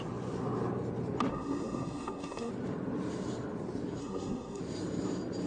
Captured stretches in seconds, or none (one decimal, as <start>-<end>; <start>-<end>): 0.0-1.3; 2.5-4.0; 4.6-5.5